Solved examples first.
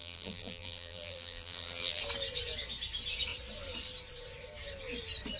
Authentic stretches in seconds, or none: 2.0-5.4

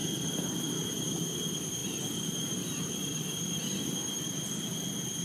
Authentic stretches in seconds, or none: 0.6-1.8; 4.4-5.2

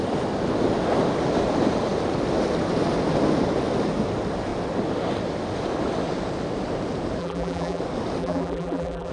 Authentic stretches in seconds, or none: 0.0-7.2; 7.8-8.2

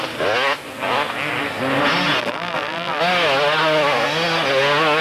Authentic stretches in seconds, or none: 0.0-2.2; 3.0-5.0

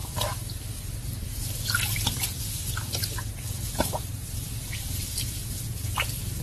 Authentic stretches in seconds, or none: 0.0-3.8